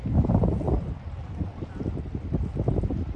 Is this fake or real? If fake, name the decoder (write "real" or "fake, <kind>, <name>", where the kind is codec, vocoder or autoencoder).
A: real